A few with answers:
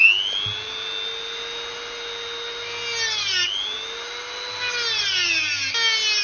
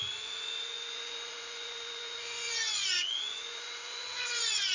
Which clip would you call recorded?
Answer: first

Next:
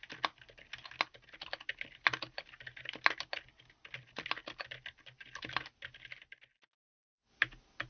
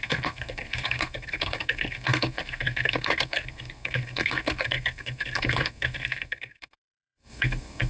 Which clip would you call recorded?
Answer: first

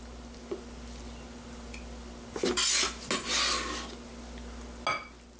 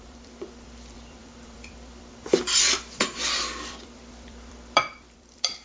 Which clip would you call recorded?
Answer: first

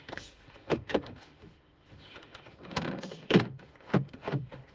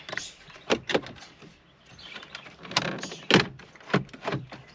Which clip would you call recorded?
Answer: second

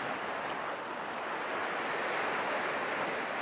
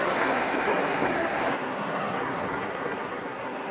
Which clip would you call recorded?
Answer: first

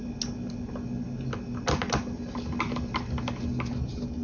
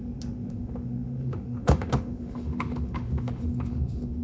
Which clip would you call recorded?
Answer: first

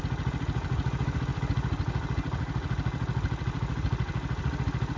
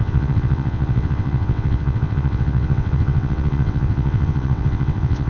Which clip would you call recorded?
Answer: first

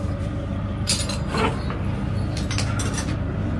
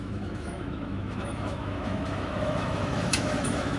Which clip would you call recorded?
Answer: first